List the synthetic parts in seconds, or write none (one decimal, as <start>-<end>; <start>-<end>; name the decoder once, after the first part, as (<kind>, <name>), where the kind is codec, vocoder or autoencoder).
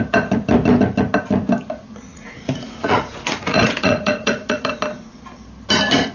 2.1-4.7 (vocoder, Vocos)